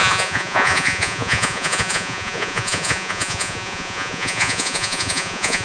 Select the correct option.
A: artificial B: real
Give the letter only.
A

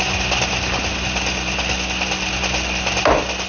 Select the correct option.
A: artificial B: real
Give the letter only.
B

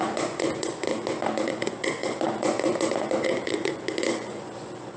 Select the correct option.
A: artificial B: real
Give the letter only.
A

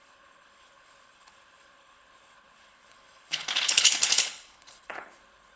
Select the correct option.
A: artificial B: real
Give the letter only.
A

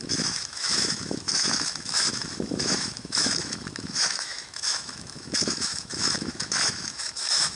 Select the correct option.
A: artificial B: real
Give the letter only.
A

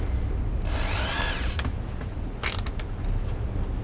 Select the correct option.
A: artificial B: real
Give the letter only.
B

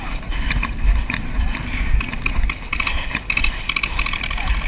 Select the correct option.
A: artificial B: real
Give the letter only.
B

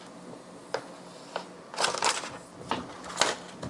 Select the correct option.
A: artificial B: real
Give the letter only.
B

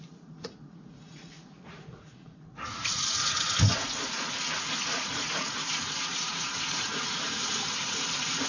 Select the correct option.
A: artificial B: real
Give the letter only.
A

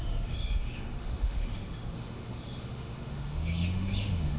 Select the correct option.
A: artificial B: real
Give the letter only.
A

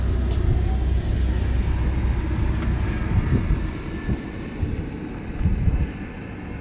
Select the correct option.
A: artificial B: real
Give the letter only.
B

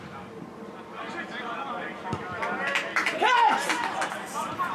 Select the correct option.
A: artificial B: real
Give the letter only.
A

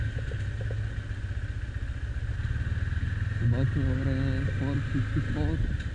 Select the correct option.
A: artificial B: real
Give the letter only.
B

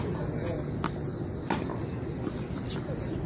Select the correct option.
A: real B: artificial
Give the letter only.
A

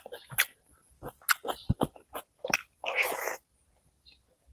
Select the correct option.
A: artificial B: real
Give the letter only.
B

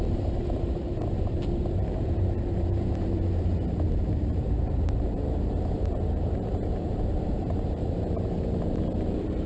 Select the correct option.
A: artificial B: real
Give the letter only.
A